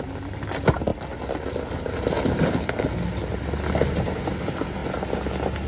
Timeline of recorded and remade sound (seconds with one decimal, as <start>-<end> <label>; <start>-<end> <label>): 0.0-5.7 recorded